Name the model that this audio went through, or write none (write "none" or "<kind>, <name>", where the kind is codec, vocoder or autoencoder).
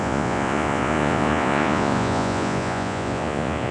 vocoder, Vocos